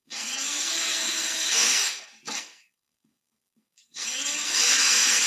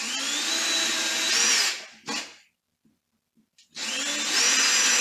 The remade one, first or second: first